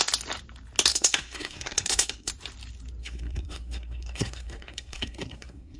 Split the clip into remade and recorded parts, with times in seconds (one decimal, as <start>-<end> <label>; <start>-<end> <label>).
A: 0.0-0.9 recorded; 0.9-2.3 remade; 2.3-3.0 recorded; 3.0-5.8 remade